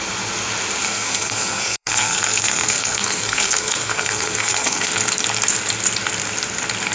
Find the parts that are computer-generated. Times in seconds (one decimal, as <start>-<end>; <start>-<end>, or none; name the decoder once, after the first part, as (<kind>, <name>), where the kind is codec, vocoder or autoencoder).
0.8-4.9 (codec, SNAC)